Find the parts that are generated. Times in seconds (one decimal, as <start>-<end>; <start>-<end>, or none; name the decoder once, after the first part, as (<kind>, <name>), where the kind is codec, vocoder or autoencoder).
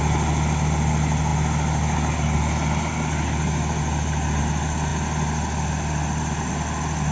none